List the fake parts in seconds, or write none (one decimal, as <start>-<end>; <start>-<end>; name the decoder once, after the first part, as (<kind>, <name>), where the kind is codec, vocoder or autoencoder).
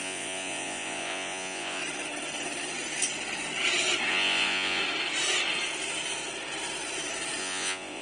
0.0-1.8 (vocoder, Vocos); 4.1-4.8; 7.4-8.0